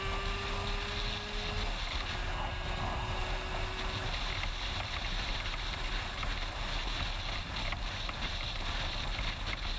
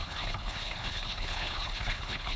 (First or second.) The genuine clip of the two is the first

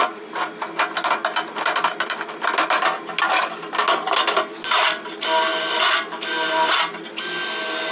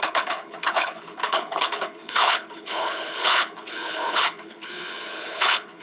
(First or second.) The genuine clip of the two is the first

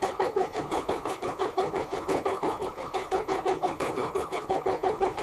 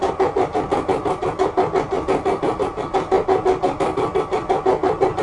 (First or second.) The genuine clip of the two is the second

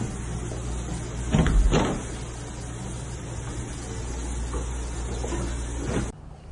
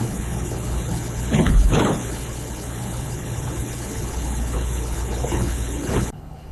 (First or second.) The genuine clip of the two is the first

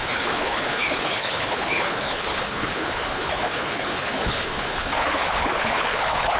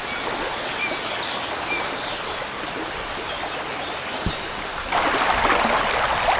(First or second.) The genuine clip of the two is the second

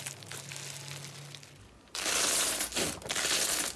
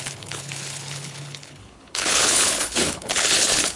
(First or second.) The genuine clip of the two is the first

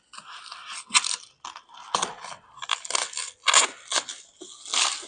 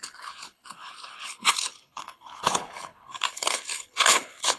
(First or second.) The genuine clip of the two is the first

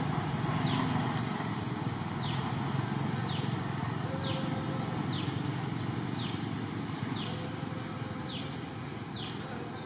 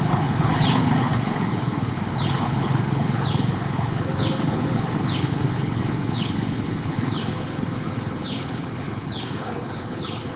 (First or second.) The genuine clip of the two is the first